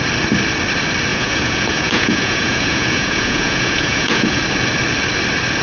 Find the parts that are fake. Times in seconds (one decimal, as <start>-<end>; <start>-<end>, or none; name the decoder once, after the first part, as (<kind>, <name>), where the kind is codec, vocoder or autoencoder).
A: 1.1-4.4 (vocoder, Vocos)